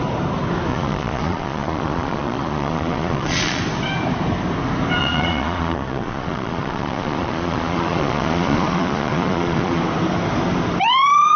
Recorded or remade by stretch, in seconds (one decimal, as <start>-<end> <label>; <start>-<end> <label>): 0.0-0.7 recorded; 0.7-3.6 remade; 3.6-5.0 recorded; 5.0-9.8 remade; 9.8-11.4 recorded